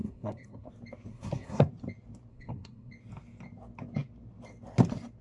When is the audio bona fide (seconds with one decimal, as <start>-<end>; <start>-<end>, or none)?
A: 0.7-1.1; 1.7-2.3; 2.9-5.2